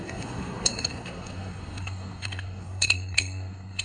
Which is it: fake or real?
fake